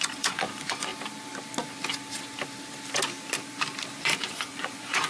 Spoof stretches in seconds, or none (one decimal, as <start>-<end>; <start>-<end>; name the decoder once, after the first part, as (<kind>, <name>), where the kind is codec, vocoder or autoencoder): 0.0-0.9 (vocoder, Vocos); 4.0-5.1